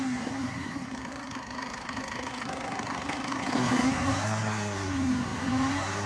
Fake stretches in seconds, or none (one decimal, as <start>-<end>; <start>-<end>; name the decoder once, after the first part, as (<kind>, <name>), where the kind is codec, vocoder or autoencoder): 0.0-6.1 (codec, SNAC)